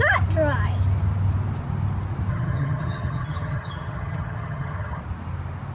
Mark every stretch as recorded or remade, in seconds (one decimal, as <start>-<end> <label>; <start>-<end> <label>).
0.0-2.3 recorded; 2.3-5.0 remade; 5.0-5.7 recorded